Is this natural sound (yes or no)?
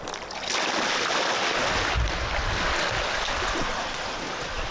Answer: yes